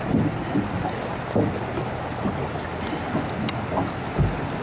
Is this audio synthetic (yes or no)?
no